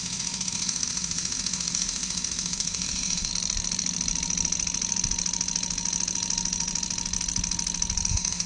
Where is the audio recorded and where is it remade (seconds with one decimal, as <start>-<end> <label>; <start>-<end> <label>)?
0.0-3.3 remade; 3.3-8.1 recorded; 8.1-8.5 remade